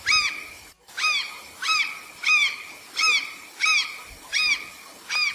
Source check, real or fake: real